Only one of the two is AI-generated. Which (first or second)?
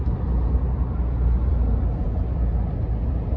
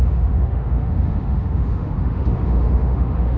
second